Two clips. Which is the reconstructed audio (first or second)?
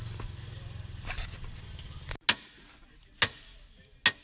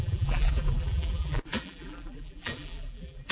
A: second